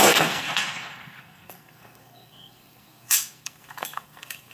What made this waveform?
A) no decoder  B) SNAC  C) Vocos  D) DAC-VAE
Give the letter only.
B